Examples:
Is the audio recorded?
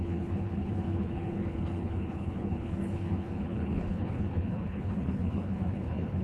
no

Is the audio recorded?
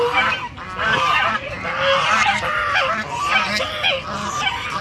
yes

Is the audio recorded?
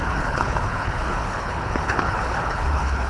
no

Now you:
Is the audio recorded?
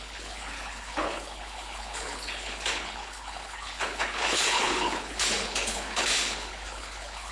no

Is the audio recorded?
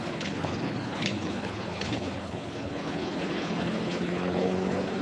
no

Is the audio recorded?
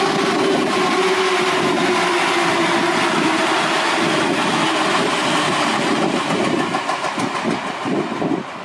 yes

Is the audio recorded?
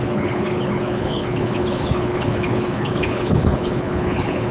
no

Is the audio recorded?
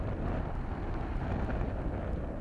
yes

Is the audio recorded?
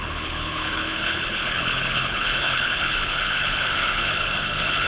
no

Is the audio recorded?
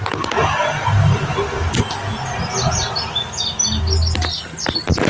yes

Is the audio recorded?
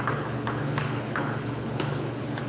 no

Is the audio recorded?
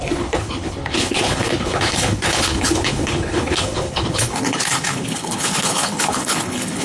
no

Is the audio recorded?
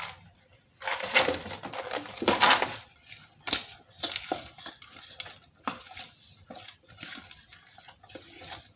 yes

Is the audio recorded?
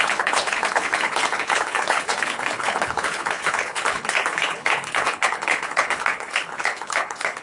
no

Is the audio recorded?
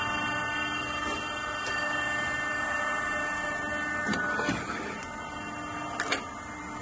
yes